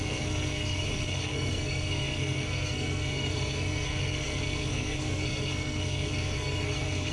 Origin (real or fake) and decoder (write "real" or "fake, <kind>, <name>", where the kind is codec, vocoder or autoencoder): fake, codec, SNAC